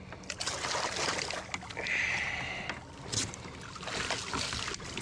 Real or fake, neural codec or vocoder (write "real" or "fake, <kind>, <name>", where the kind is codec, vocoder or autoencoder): real